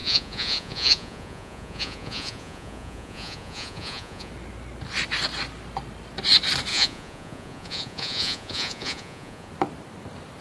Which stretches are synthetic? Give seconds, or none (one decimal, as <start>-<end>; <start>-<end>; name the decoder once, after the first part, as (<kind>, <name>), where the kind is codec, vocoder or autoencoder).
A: 0.0-4.3 (vocoder, Vocos); 6.7-9.5